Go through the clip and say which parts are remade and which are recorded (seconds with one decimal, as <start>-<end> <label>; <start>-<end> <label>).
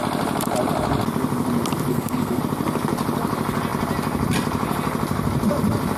0.0-1.9 recorded; 1.9-2.4 remade; 2.4-6.0 recorded